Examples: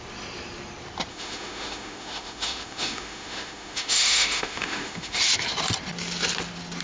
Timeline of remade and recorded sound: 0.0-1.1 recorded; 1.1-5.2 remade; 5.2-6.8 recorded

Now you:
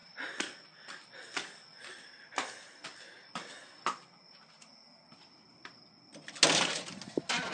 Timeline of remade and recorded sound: 0.0-7.5 recorded

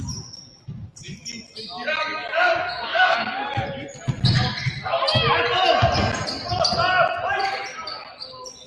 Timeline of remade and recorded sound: 0.0-2.6 recorded; 2.6-3.5 remade; 3.5-8.7 recorded